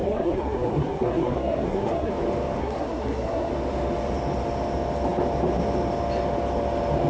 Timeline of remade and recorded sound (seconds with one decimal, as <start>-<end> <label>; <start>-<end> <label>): 0.0-2.1 remade; 2.1-2.6 recorded; 2.6-3.5 remade; 3.5-7.1 recorded